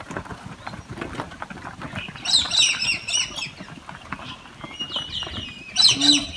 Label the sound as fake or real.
real